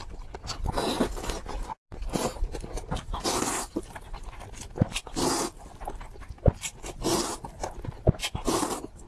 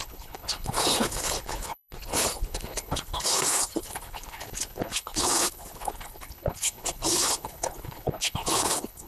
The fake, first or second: second